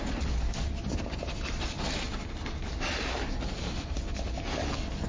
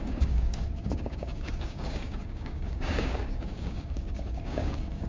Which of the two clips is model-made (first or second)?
second